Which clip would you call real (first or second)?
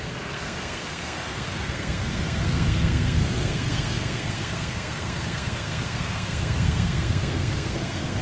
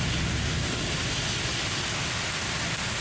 second